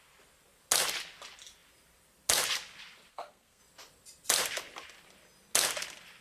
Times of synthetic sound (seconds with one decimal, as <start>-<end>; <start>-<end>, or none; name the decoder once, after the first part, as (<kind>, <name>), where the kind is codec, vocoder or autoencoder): 3.1-3.6 (codec, SNAC)